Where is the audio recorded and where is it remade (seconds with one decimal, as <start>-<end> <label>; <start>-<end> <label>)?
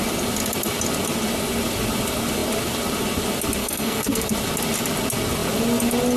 0.0-3.6 recorded; 3.6-4.3 remade; 4.3-6.2 recorded